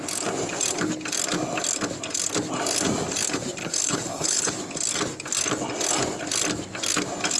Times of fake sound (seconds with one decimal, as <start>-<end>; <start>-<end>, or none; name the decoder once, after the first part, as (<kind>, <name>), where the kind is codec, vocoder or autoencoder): 3.6-4.5 (codec, HILCodec)